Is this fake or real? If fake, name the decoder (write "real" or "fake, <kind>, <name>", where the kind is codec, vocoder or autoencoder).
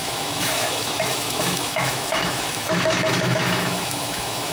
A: fake, autoencoder, DAC-VAE